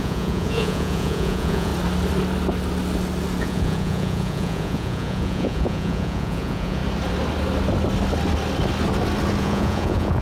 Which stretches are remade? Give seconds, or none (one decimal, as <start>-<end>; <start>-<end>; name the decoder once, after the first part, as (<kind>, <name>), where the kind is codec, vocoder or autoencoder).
0.0-1.7 (vocoder, Vocos); 3.4-6.8; 9.4-10.2